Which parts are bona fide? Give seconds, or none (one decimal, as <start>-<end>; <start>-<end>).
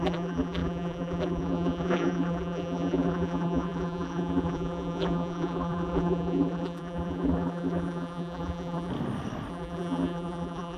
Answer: 8.9-9.5